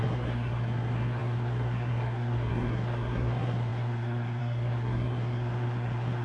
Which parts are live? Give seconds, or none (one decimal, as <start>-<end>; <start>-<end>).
none